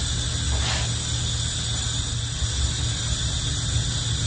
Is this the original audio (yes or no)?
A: yes